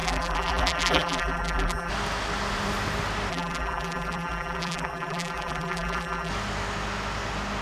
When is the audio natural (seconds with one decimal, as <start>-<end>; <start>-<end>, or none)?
1.9-3.3; 6.3-7.6